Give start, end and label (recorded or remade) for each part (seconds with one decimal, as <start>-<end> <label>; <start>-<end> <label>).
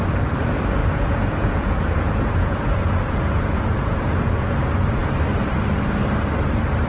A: 0.0-0.8 recorded; 0.8-4.4 remade; 4.4-6.9 recorded